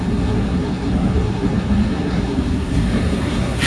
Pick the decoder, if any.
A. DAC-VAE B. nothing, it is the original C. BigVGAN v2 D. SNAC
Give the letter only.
D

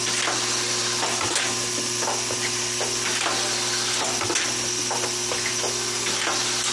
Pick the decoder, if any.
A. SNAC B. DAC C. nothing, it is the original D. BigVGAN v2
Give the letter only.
C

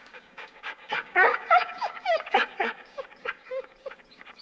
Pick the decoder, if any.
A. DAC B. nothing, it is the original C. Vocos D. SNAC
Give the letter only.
A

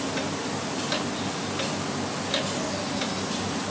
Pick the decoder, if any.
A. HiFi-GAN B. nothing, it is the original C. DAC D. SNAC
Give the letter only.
B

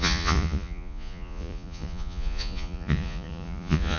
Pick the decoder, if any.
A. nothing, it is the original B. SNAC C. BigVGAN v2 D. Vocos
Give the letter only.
D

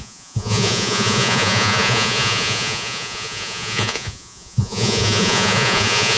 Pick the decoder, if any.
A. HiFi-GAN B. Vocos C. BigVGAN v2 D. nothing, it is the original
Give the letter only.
B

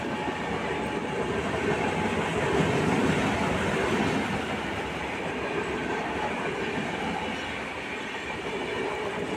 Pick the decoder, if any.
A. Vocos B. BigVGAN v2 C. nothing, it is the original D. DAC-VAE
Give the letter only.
C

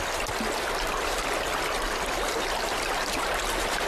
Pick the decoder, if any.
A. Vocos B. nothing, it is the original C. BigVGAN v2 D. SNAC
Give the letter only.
B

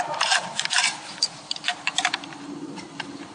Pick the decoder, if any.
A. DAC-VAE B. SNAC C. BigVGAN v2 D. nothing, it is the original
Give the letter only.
D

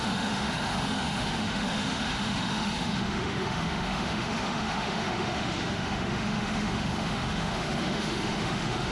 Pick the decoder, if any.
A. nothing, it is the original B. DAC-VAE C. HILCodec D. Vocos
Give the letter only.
B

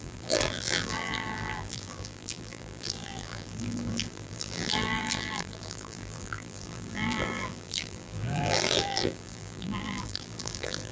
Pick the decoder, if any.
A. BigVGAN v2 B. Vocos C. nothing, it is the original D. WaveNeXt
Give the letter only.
A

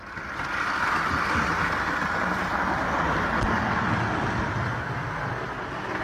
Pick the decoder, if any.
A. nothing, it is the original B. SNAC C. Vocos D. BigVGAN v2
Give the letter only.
A